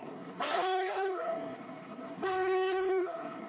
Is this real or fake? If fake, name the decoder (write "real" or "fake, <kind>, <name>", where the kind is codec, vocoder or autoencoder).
fake, codec, SNAC